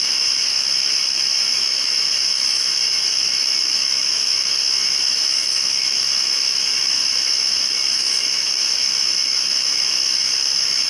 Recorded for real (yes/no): no